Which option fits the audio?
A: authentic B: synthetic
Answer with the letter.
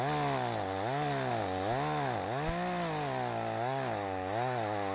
A